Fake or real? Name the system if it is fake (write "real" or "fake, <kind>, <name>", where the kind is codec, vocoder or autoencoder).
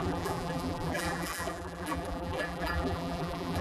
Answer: fake, vocoder, BigVGAN v2